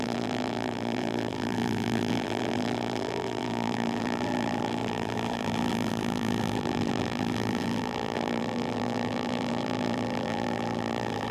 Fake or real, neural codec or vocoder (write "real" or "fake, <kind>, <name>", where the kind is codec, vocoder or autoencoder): fake, vocoder, BigVGAN v2